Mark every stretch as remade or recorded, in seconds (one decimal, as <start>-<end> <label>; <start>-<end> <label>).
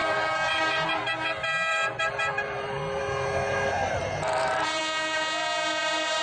0.0-1.0 remade; 1.0-1.7 recorded; 1.7-3.0 remade; 3.0-3.8 recorded; 3.8-4.8 remade; 4.8-6.2 recorded